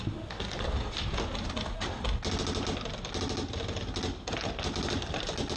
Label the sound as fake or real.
real